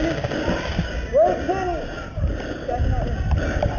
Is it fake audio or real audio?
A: real